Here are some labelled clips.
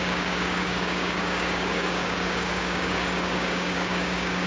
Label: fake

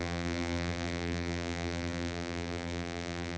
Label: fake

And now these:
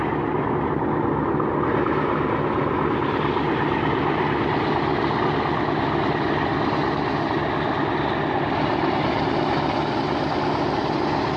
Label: real